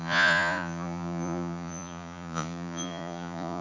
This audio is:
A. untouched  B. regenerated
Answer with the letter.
B